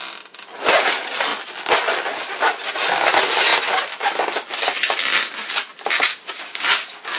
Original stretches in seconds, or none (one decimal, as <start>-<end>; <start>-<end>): 0.0-6.1